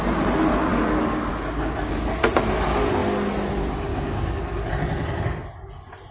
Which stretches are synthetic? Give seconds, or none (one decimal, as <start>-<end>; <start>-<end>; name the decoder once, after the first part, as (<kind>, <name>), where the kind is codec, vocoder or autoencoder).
0.7-1.3 (codec, DAC); 3.9-4.7